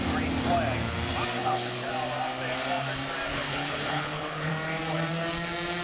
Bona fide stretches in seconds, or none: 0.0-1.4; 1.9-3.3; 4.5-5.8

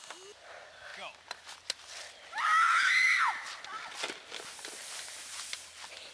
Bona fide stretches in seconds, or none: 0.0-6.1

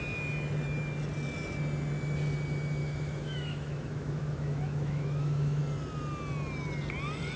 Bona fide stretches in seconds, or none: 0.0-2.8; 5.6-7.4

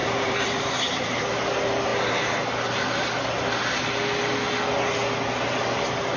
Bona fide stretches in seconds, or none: 1.2-6.2